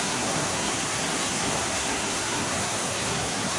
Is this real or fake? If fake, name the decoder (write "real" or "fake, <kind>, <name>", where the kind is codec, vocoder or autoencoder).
fake, codec, SNAC